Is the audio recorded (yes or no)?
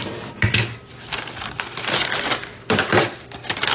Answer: yes